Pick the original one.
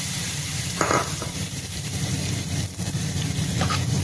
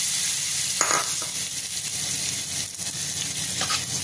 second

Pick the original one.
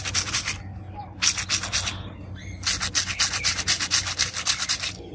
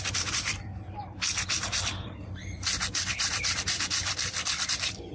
first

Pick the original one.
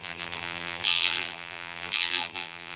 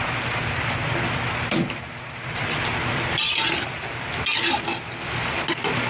second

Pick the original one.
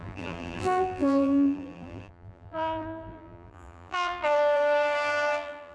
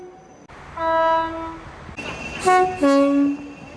second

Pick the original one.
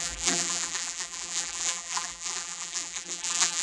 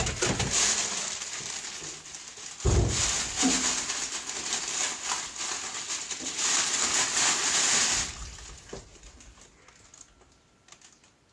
second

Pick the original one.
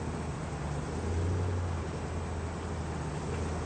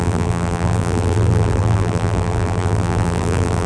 first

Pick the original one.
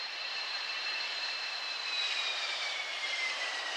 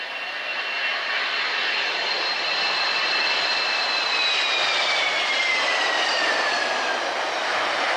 second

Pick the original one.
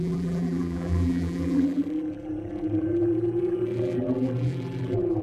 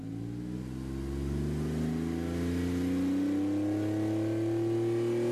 second